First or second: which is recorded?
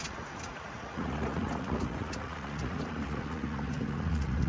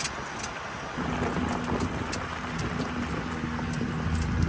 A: second